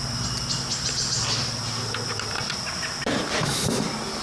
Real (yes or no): yes